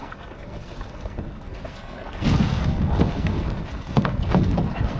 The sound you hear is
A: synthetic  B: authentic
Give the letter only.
A